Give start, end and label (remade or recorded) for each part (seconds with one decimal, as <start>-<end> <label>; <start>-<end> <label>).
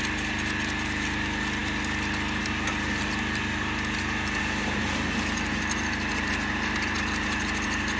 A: 0.0-8.0 recorded